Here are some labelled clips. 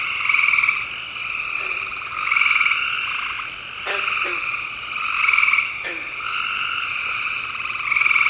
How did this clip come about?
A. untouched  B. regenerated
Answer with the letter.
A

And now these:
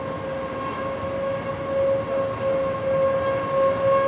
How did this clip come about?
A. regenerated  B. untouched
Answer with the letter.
B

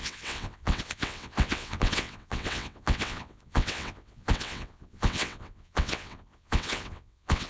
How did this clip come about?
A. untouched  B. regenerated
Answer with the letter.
B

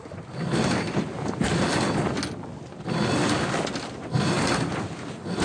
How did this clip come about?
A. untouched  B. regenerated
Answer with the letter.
A